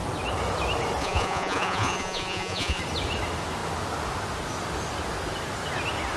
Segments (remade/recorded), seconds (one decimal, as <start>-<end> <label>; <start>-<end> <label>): 0.0-1.0 recorded; 1.0-2.8 remade; 2.8-6.2 recorded